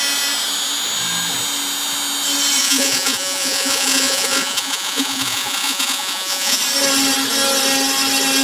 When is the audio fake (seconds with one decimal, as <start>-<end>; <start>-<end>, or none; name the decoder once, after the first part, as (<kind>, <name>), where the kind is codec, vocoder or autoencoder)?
2.6-6.6 (vocoder, Vocos)

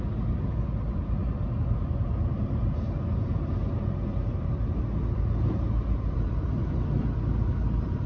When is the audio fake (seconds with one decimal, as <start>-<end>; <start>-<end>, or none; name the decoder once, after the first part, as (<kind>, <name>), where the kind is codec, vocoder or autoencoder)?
none

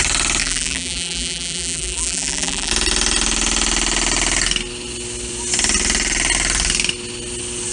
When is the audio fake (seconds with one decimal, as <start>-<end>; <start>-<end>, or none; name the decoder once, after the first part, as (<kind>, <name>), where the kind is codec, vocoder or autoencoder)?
0.4-2.7 (vocoder, BigVGAN v2)